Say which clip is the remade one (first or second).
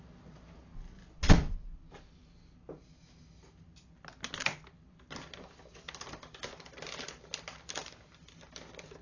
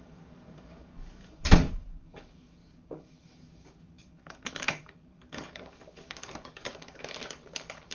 second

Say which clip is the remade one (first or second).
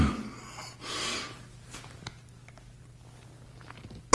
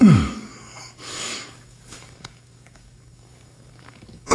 second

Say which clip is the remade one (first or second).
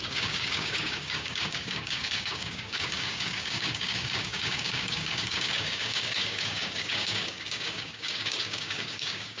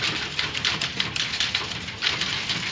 first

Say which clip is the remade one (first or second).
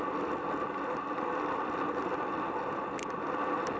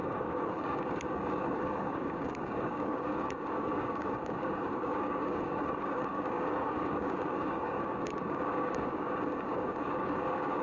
second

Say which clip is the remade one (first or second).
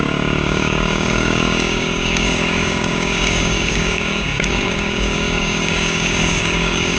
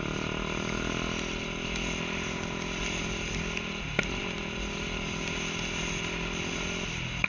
first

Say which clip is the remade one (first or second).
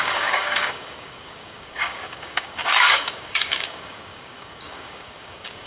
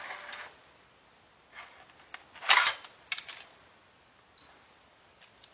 first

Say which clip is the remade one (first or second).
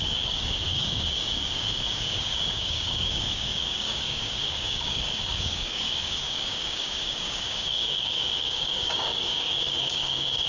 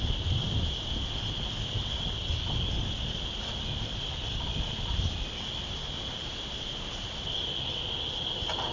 first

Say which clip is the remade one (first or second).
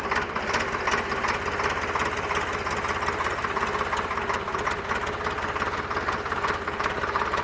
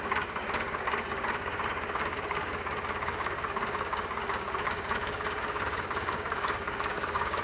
second